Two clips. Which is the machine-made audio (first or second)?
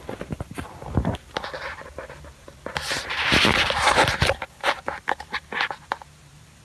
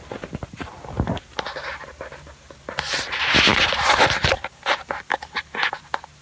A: first